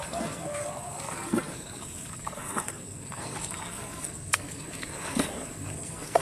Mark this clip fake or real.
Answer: fake